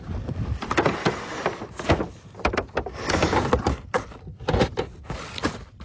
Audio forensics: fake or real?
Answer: real